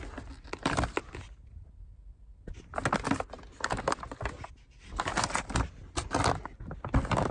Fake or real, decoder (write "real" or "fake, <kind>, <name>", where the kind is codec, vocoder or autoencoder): real